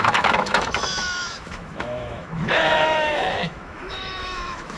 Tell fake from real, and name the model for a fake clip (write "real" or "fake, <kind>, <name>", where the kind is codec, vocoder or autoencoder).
fake, autoencoder, DAC-VAE